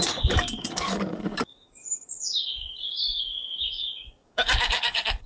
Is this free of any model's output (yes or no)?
no